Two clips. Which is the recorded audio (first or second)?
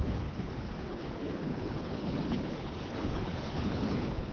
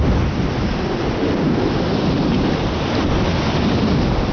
second